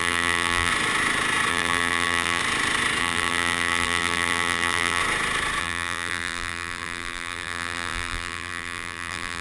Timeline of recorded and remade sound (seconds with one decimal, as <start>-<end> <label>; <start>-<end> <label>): 0.0-0.7 remade; 0.7-1.5 recorded; 1.5-2.4 remade; 2.4-3.0 recorded; 3.0-5.0 remade; 5.0-5.6 recorded; 5.6-9.4 remade